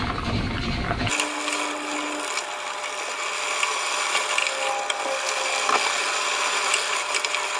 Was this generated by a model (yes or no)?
no